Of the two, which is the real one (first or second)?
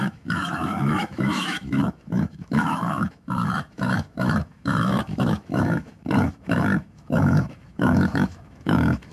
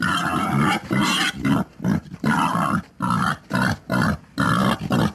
second